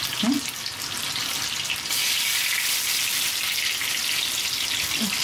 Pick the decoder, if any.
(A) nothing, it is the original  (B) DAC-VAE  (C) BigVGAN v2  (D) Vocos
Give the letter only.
A